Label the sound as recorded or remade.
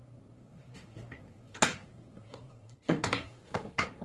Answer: remade